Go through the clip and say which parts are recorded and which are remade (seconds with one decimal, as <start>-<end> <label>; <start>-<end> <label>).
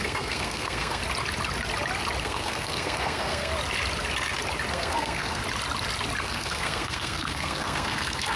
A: 0.0-1.0 remade; 1.0-2.2 recorded; 2.2-3.5 remade; 3.5-4.7 recorded; 4.7-5.4 remade; 5.4-6.2 recorded; 6.2-8.4 remade